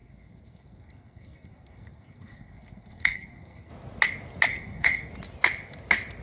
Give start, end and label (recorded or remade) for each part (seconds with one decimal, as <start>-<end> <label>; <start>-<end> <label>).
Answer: 0.0-3.7 remade; 3.7-4.5 recorded; 4.5-5.1 remade; 5.1-6.2 recorded